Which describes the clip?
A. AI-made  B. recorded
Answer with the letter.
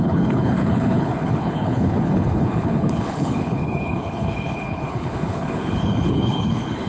A